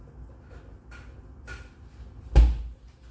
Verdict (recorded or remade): recorded